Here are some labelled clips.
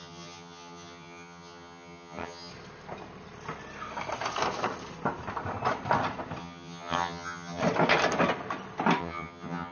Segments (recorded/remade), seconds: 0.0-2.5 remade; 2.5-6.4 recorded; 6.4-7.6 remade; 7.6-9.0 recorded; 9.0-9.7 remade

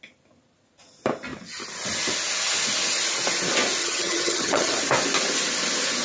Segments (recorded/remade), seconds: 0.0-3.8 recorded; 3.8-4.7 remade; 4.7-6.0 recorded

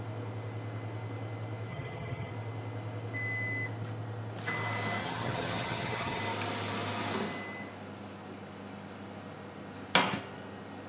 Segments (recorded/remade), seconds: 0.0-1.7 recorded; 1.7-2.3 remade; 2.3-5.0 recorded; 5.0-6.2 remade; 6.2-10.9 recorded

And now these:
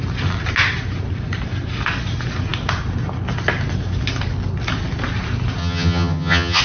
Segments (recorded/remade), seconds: 0.0-5.6 recorded; 5.6-6.6 remade

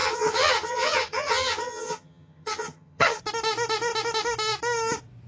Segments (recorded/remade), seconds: 0.0-3.2 remade; 3.2-5.3 recorded

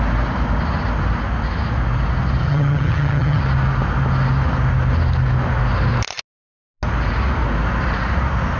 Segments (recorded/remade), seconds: 0.0-2.4 recorded; 2.4-3.4 remade; 3.4-8.6 recorded